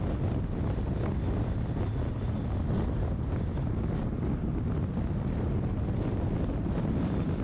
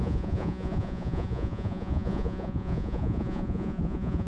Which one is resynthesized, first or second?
second